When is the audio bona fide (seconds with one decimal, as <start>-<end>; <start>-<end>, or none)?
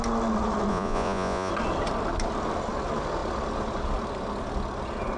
0.0-0.7; 1.5-5.2